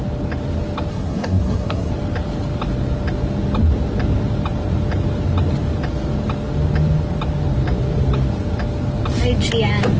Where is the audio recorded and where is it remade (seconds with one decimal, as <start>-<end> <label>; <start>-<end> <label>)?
0.0-0.9 recorded; 0.9-1.9 remade; 1.9-10.0 recorded